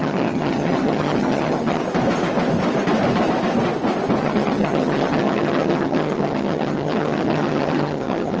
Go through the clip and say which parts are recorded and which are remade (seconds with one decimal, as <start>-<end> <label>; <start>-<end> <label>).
0.0-1.8 remade; 1.8-4.2 recorded; 4.2-8.4 remade